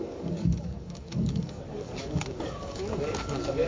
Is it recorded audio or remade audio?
remade